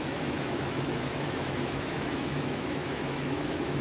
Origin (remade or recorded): remade